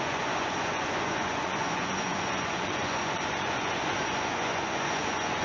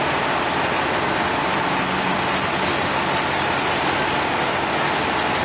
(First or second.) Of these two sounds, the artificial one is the first